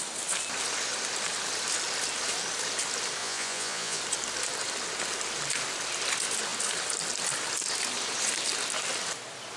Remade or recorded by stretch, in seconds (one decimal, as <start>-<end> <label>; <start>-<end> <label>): 0.0-3.2 recorded; 3.2-4.0 remade; 4.0-9.6 recorded